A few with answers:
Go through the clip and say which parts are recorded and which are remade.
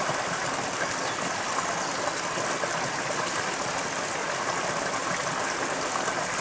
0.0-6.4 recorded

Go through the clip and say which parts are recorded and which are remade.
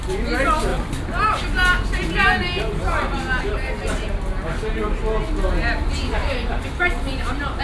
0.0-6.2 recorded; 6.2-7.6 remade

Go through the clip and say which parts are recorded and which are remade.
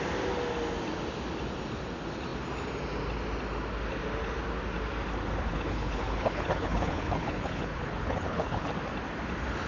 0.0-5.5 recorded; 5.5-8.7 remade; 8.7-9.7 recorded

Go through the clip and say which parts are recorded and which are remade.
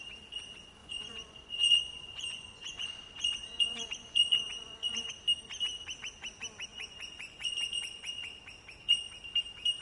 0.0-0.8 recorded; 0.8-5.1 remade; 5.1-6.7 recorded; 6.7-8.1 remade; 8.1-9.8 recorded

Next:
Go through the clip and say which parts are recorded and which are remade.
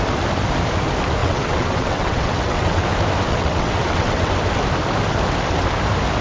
0.0-1.2 recorded; 1.2-2.8 remade; 2.8-3.3 recorded; 3.3-4.3 remade; 4.3-6.2 recorded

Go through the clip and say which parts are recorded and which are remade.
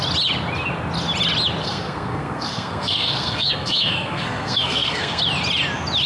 0.0-1.6 recorded; 1.6-5.2 remade; 5.2-6.1 recorded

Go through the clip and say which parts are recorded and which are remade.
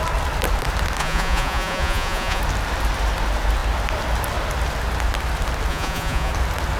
0.0-1.0 recorded; 1.0-2.4 remade; 2.4-5.7 recorded; 5.7-6.3 remade; 6.3-6.8 recorded